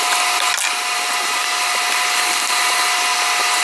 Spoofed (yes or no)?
no